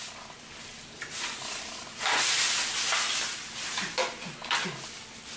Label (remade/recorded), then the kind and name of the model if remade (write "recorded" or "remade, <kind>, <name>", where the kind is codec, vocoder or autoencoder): recorded